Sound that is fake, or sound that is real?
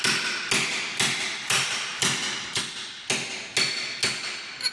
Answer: real